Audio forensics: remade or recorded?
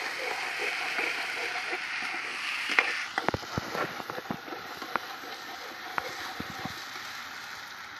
recorded